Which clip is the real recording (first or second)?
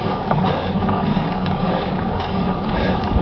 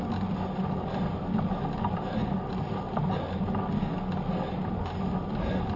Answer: second